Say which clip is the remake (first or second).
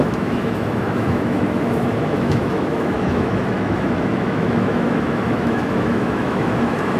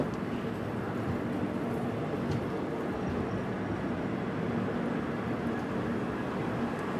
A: first